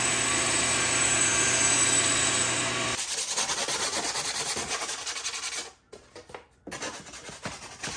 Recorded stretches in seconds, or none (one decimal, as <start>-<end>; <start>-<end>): 0.0-8.0